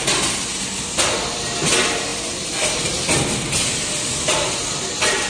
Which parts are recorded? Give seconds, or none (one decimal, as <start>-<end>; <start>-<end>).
0.0-5.3